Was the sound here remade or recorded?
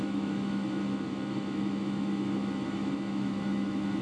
remade